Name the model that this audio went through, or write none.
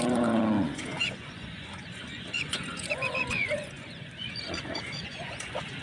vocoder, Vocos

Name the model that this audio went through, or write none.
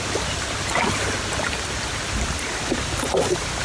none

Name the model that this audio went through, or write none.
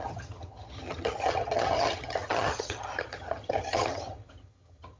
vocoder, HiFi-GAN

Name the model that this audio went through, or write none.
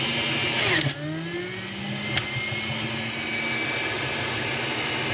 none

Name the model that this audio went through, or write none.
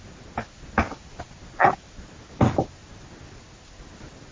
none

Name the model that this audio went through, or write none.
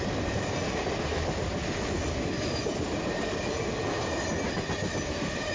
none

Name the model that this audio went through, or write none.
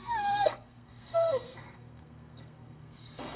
codec, SNAC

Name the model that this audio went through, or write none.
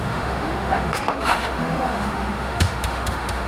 autoencoder, DAC-VAE